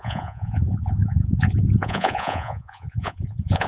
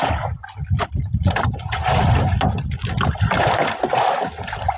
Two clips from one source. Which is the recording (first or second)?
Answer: second